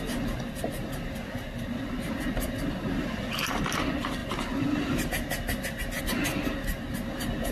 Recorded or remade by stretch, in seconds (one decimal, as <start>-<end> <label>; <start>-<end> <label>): 0.0-7.5 recorded